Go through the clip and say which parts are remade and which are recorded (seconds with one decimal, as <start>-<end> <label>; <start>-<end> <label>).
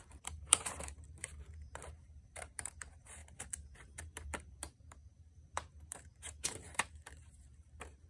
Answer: 0.0-8.1 remade